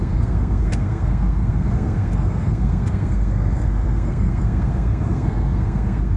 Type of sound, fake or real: fake